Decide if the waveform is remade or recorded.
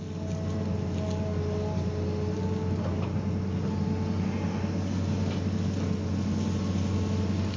recorded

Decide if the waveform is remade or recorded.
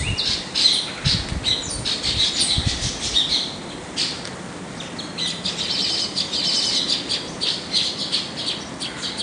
recorded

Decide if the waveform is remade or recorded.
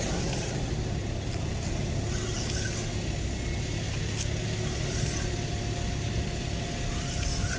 recorded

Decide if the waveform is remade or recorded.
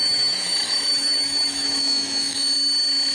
remade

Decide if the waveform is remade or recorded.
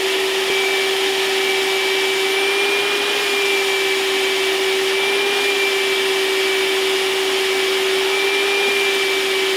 recorded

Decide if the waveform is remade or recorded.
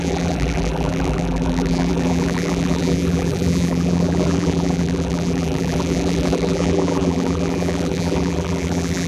remade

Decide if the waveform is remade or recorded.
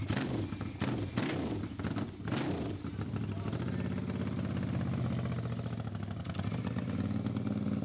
recorded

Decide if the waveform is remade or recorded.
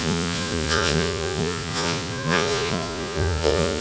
remade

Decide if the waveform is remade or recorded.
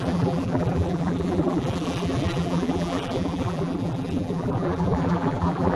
remade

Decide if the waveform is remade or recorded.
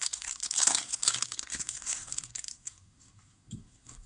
remade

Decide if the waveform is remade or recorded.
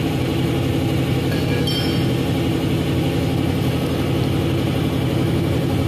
recorded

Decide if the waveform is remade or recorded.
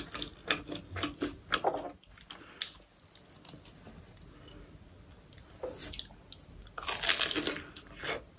recorded